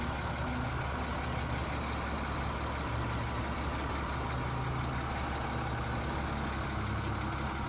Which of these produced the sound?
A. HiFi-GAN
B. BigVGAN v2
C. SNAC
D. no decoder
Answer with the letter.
D